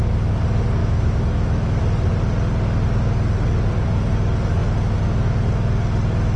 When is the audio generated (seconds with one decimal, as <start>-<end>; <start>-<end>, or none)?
0.8-1.8